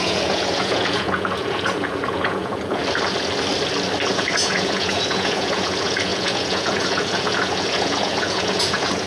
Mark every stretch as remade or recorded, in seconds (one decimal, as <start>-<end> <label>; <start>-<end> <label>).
0.0-2.8 remade; 2.8-4.1 recorded; 4.1-9.1 remade